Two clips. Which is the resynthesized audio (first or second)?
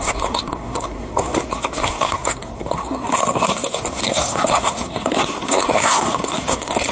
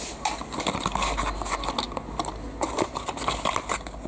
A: first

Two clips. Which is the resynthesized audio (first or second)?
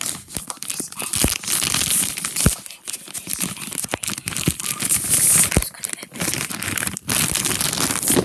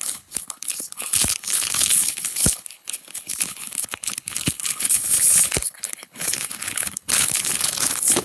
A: second